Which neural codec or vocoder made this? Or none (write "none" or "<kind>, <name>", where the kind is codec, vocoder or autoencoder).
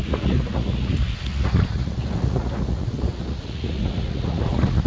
vocoder, Vocos